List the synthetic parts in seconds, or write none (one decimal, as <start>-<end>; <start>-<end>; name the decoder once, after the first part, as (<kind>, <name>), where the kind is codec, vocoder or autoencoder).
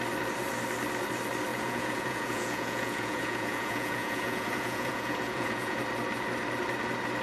1.5-5.8 (vocoder, Vocos)